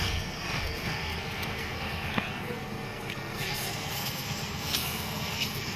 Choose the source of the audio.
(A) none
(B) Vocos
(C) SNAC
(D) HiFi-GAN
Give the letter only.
C